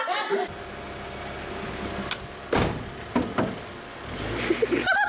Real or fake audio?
real